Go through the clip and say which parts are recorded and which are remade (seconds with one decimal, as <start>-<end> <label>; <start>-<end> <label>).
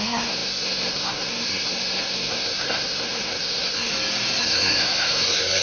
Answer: 0.0-3.9 remade; 3.9-4.4 recorded; 4.4-5.6 remade